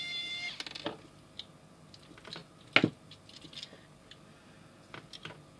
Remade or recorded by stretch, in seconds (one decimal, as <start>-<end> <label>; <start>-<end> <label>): 0.0-5.6 recorded